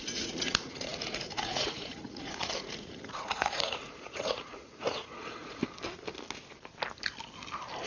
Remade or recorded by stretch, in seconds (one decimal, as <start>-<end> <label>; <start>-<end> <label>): 0.0-5.6 remade; 5.6-7.9 recorded

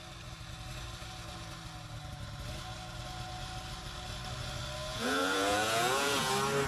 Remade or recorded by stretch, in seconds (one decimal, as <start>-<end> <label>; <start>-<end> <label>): 0.0-4.9 recorded; 4.9-6.3 remade; 6.3-6.7 recorded

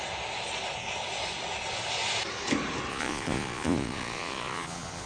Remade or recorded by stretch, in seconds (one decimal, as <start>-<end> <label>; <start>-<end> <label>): 0.0-2.9 recorded; 2.9-5.1 remade

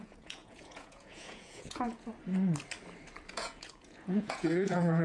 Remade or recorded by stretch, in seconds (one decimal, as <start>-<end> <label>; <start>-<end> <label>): 0.0-2.1 remade; 2.1-3.3 recorded; 3.3-5.0 remade

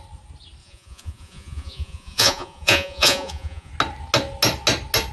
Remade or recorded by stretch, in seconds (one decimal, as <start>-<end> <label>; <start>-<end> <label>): 0.0-0.6 recorded; 0.6-3.7 remade; 3.7-5.1 recorded

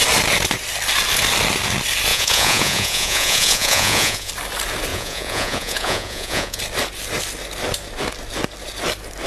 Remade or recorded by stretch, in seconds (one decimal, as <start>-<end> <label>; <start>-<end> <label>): 0.0-2.1 recorded; 2.1-4.3 remade; 4.3-4.9 recorded; 4.9-6.6 remade; 6.6-9.3 recorded

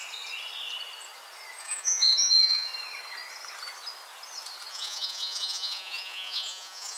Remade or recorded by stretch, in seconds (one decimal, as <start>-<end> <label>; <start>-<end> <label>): 0.0-1.6 recorded; 1.6-2.7 remade; 2.7-4.7 recorded; 4.7-7.0 remade